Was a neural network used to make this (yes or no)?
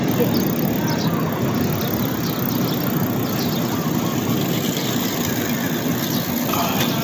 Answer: no